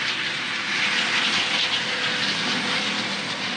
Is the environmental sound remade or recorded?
recorded